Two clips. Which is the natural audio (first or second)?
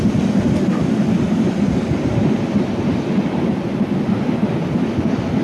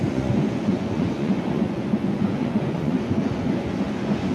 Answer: first